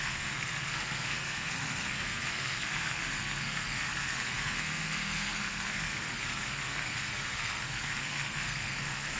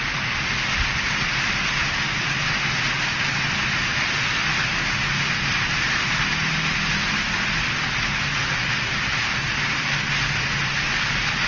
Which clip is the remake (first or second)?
first